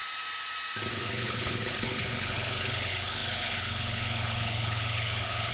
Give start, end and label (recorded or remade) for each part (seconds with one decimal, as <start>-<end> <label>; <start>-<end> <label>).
0.0-0.9 recorded; 0.9-5.5 remade